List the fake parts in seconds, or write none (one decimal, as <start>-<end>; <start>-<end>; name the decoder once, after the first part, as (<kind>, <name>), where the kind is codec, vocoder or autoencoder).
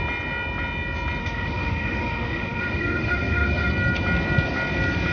1.2-3.7 (autoencoder, DAC-VAE)